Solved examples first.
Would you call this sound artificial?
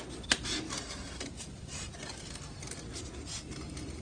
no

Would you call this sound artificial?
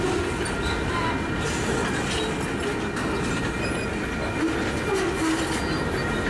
no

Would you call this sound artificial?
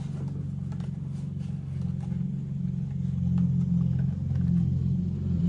no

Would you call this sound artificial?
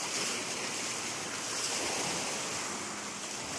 no